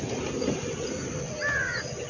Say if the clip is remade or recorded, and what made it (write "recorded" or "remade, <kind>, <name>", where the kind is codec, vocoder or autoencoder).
recorded